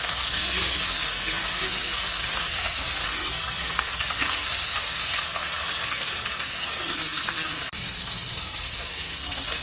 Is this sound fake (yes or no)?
yes